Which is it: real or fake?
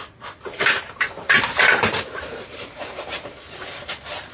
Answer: fake